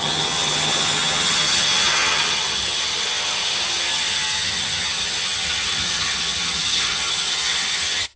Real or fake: fake